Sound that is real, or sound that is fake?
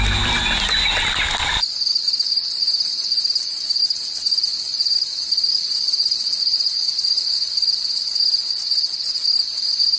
real